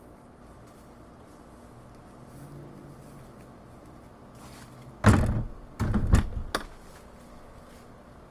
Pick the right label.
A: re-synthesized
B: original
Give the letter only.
B